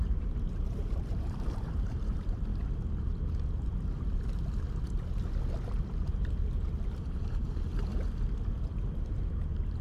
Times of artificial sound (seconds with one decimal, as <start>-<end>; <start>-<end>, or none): 0.0-2.5; 6.9-7.7; 8.6-9.8